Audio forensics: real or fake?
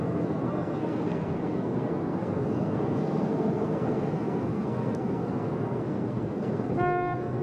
fake